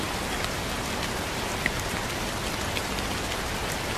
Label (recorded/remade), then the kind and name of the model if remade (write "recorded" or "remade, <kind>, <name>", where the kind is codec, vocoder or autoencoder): recorded